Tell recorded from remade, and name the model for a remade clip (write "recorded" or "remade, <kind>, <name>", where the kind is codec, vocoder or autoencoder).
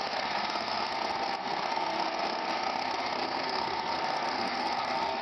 remade, codec, SNAC